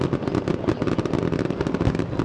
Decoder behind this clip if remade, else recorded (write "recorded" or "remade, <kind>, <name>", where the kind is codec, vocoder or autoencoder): recorded